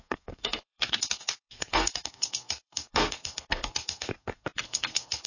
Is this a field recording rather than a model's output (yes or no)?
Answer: no